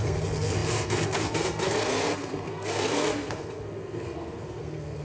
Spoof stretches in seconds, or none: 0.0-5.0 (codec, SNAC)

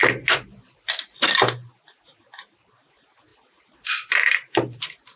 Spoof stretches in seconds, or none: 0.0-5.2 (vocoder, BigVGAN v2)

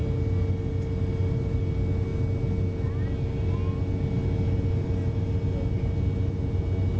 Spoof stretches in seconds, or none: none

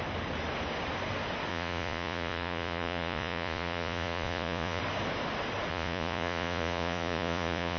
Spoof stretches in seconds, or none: 1.5-4.8 (vocoder, Vocos); 5.7-7.8

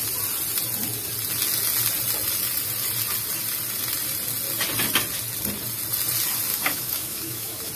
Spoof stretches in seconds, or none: 6.5-7.7 (autoencoder, DAC-VAE)

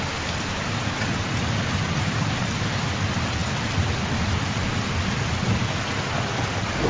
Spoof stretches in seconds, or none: none

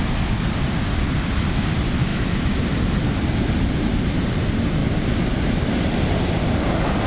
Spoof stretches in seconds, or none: 2.1-2.6 (autoencoder, DAC-VAE)